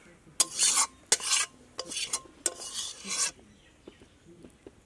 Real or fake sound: real